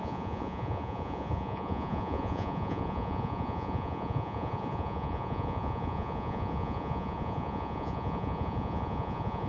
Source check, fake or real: fake